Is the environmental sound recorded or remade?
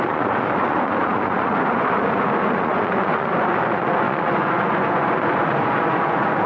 remade